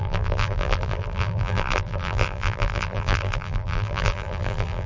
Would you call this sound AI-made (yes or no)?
yes